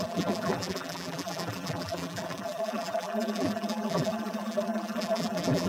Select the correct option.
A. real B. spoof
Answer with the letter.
B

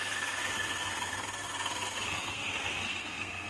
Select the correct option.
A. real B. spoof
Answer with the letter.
B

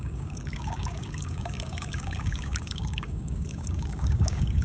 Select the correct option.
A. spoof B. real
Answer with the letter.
A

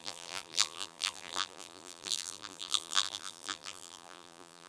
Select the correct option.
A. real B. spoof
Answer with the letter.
B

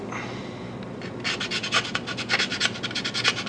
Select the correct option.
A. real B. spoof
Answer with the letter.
A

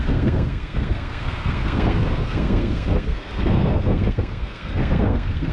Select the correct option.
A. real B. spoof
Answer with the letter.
B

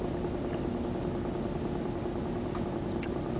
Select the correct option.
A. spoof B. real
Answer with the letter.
B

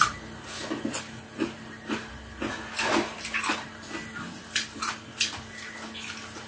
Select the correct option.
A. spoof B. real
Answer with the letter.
B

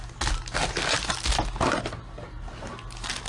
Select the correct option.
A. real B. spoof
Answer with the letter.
A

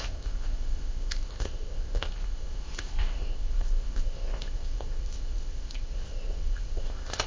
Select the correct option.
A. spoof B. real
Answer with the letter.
A